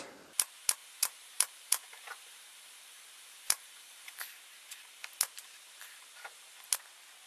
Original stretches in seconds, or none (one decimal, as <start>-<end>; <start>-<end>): 0.0-0.8; 5.2-7.3